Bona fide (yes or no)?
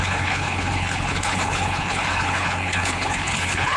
no